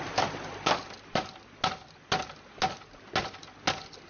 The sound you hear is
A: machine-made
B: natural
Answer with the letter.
B